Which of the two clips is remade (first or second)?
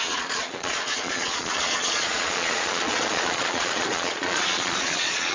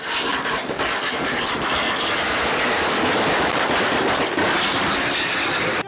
first